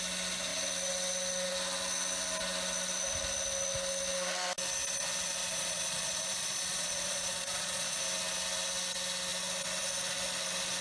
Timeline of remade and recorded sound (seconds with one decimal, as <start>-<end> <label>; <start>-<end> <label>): 0.0-5.4 recorded; 5.4-8.0 remade; 8.0-10.8 recorded